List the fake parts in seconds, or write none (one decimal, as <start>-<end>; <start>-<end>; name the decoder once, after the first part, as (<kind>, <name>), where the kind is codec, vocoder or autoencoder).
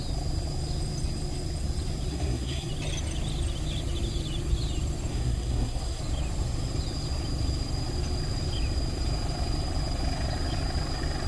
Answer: 2.1-2.7 (codec, SNAC); 5.1-6.0